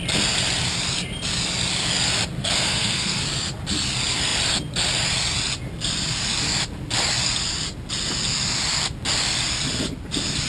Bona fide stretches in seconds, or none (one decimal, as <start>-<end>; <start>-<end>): 0.0-2.4; 3.2-10.5